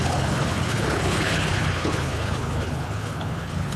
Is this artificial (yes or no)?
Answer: yes